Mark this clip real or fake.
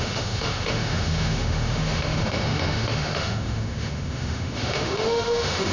fake